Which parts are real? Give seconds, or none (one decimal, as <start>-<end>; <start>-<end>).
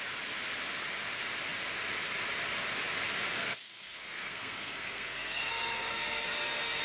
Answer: 0.0-3.4